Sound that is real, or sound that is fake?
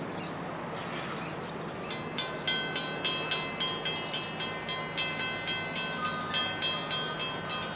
real